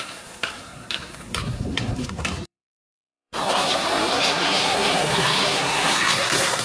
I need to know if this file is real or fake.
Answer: fake